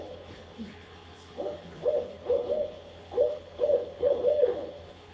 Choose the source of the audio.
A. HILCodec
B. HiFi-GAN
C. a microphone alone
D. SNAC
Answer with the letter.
A